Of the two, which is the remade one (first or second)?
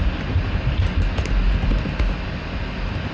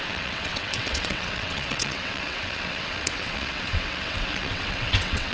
second